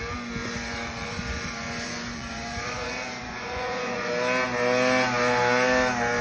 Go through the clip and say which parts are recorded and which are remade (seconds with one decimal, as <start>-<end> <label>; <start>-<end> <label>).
0.0-0.4 recorded; 0.4-4.1 remade; 4.1-6.2 recorded